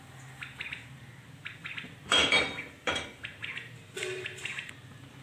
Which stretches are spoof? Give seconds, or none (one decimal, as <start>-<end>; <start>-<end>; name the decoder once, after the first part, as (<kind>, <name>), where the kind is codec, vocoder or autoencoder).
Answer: 1.6-4.7 (vocoder, BigVGAN v2)